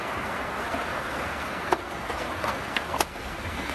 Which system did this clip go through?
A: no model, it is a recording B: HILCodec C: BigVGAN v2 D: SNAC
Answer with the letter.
D